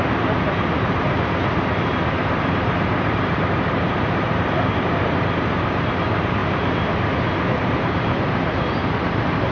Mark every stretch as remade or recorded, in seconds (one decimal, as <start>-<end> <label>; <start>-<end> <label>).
0.0-6.4 remade; 6.4-7.6 recorded; 7.6-9.5 remade